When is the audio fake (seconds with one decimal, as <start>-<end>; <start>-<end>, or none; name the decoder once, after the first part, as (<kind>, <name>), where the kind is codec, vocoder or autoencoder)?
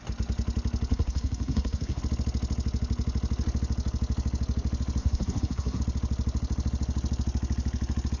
0.9-2.0 (codec, SNAC); 5.0-5.8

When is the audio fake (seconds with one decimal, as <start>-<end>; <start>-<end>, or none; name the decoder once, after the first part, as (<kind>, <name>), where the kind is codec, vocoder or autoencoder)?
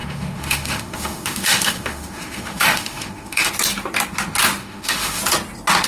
0.0-3.5 (autoencoder, DAC-VAE); 4.6-5.2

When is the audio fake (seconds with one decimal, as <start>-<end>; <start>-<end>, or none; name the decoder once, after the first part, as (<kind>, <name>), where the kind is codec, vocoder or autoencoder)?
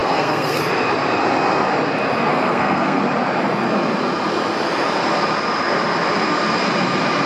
0.0-0.6 (codec, SNAC); 2.3-3.0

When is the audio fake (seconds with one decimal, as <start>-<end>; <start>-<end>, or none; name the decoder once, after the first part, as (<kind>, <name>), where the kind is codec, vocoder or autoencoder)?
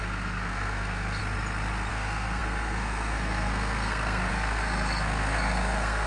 0.0-1.2 (codec, SNAC); 1.9-6.1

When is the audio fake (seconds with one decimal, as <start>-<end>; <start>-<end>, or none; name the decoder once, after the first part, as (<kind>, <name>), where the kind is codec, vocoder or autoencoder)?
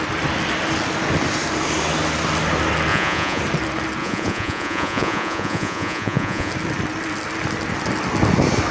2.9-3.4 (vocoder, Vocos); 4.0-6.5